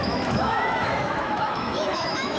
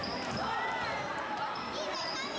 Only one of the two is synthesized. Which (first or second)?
first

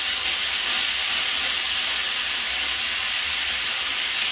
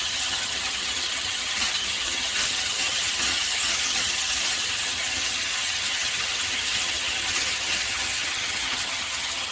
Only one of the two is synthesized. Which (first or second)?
second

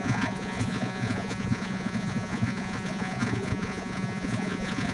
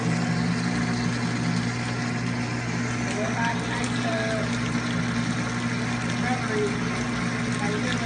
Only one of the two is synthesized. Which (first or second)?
first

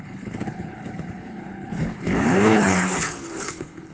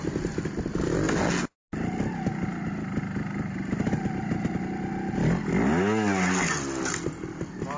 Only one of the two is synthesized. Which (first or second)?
first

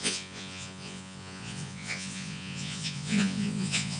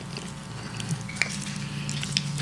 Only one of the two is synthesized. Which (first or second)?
first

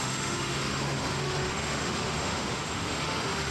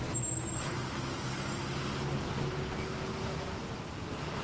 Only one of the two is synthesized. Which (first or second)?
first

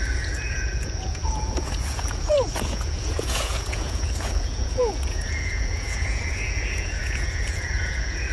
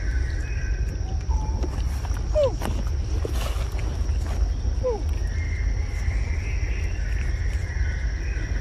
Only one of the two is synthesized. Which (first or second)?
first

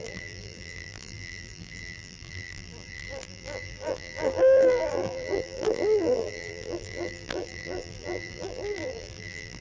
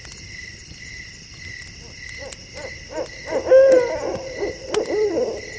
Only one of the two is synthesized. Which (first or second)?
first